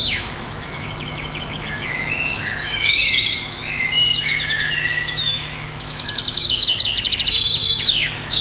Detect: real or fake fake